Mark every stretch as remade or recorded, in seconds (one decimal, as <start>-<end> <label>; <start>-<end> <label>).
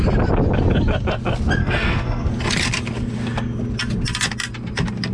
0.0-1.6 recorded; 1.6-2.3 remade; 2.3-5.1 recorded